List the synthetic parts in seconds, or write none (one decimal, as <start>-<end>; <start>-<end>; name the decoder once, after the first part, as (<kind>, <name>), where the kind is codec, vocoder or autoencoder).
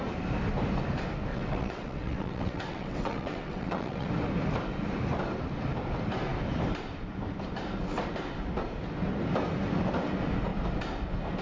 1.3-4.1 (vocoder, WaveNeXt)